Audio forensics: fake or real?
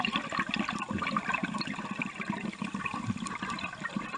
real